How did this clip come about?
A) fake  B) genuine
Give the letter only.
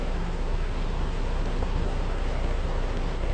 A